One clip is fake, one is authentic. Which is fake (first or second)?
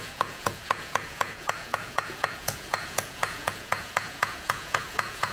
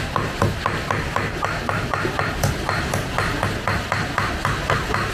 first